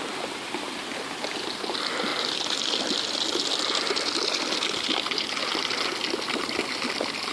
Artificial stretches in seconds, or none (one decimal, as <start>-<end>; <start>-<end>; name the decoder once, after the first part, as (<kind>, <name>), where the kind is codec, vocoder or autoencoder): none